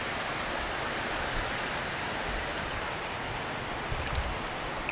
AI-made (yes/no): no